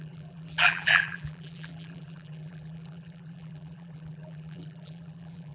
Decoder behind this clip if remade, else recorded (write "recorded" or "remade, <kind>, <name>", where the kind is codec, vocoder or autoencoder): remade, vocoder, BigVGAN v2